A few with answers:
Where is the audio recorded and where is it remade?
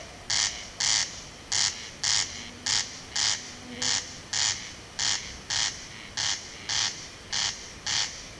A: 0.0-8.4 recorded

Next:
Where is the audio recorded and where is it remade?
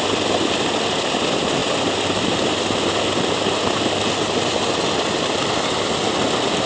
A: 0.0-6.7 recorded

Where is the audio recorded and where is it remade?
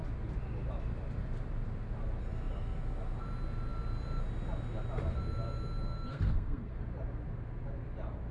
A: 0.0-6.1 recorded; 6.1-6.8 remade; 6.8-8.3 recorded